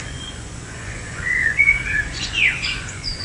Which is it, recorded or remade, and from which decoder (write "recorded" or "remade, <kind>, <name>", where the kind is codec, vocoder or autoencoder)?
remade, vocoder, Vocos